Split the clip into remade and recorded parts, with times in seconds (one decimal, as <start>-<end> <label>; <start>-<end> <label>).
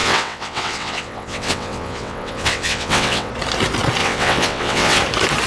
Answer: 0.0-3.3 remade; 3.3-4.0 recorded; 4.0-5.0 remade; 5.0-5.5 recorded